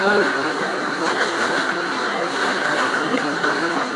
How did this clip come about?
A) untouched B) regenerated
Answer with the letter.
B